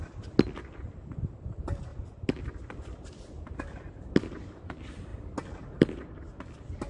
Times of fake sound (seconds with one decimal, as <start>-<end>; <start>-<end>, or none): none